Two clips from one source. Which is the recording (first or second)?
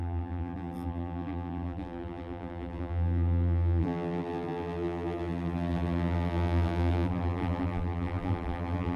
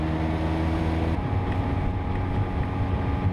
second